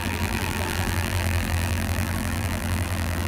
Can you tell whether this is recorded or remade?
remade